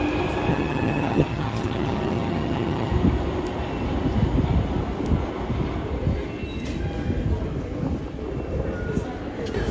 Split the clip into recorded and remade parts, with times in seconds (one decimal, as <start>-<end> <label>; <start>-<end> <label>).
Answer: 0.0-0.5 recorded; 0.5-2.9 remade; 2.9-9.7 recorded